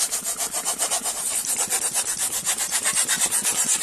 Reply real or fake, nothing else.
real